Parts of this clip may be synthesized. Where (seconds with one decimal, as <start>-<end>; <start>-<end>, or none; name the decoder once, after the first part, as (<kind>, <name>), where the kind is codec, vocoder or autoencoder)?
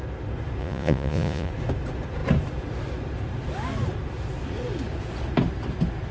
0.6-1.5 (vocoder, Vocos)